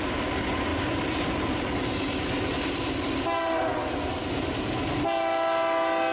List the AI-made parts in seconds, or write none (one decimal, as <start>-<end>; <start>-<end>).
none